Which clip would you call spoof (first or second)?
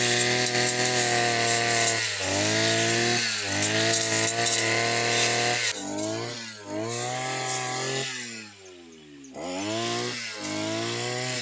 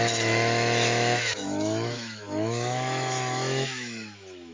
second